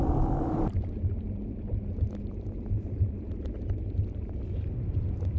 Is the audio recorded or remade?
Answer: recorded